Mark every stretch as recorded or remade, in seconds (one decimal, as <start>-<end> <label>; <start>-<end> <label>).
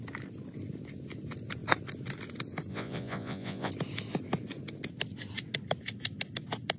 0.0-2.7 recorded; 2.7-3.7 remade; 3.7-6.8 recorded